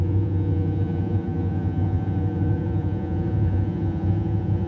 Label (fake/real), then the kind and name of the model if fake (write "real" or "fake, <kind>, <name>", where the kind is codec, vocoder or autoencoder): fake, vocoder, Vocos